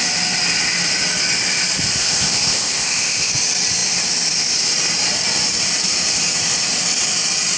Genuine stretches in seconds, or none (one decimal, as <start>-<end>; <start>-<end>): 0.0-2.0; 3.3-7.6